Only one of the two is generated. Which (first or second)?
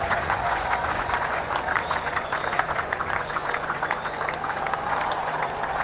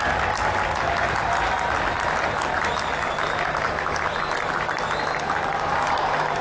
first